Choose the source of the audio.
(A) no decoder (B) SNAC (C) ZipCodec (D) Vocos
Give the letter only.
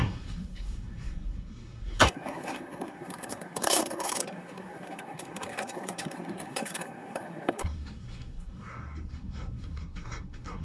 B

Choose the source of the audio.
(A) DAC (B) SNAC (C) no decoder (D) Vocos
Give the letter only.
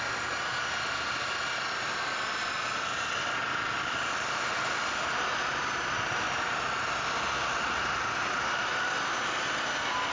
C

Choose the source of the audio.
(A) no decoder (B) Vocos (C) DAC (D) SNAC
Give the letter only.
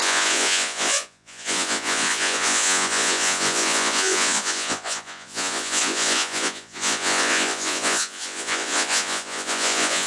B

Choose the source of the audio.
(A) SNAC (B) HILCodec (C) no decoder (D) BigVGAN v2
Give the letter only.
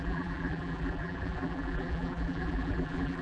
D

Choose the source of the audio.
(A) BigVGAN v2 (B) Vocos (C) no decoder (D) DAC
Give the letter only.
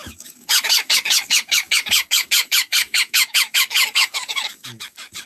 D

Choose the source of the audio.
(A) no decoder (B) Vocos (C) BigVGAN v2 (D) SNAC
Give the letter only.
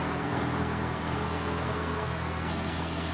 D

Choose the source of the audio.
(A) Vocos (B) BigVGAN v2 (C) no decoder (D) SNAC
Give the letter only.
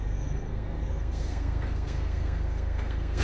D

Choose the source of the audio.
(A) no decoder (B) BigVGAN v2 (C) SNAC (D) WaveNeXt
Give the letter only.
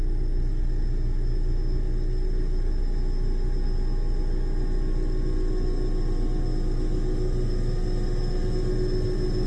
A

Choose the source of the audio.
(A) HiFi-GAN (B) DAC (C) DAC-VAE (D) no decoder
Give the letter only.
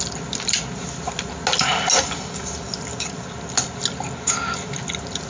D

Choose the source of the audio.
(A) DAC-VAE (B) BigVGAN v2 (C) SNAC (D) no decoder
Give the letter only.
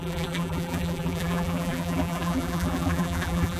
B